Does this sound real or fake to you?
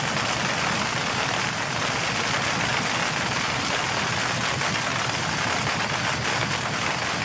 real